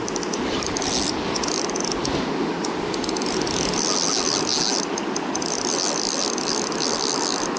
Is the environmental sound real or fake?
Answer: real